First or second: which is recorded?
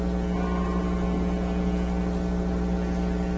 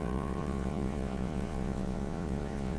first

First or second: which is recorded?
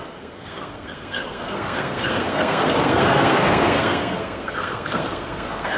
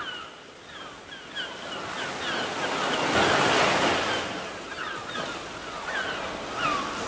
second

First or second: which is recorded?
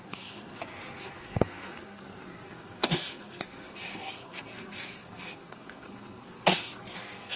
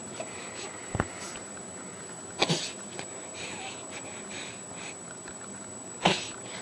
second